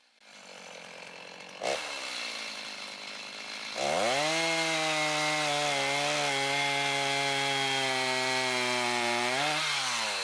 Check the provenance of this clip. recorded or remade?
recorded